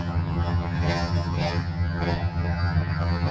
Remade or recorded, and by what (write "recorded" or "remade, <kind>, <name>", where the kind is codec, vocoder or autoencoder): remade, vocoder, HiFi-GAN